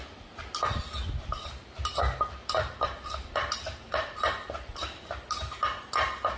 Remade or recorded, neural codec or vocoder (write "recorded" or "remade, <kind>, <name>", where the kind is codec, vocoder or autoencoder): recorded